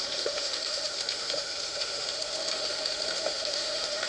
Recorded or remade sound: remade